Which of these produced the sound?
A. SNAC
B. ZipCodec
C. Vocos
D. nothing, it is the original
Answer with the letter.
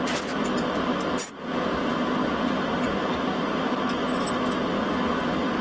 D